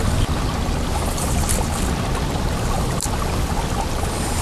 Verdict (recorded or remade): recorded